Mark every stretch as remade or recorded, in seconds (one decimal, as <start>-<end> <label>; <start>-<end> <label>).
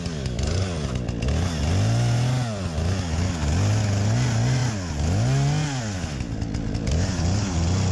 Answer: 0.0-7.9 recorded